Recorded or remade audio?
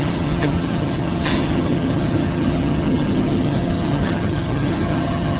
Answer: remade